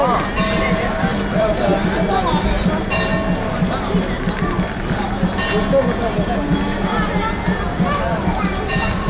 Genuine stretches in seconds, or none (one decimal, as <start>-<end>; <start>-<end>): 1.7-5.8; 6.5-8.1